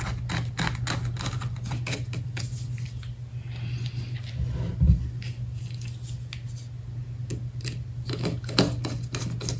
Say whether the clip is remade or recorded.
recorded